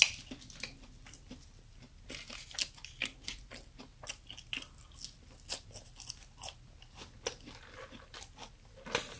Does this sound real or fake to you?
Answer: real